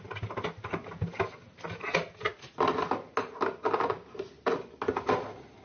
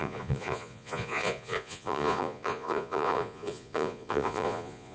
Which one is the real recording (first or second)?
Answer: first